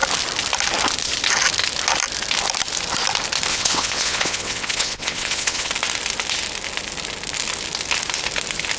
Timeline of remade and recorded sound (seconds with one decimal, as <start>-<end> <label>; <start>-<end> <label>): 0.0-3.5 recorded; 3.5-5.7 remade; 5.7-8.8 recorded